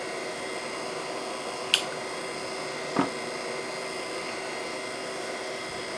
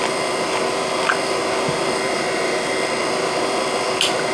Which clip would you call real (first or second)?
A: first